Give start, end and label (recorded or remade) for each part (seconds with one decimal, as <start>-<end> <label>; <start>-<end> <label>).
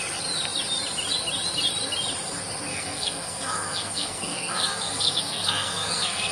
0.0-2.7 recorded; 2.7-6.3 remade